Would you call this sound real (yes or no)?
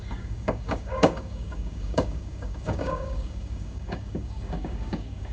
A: no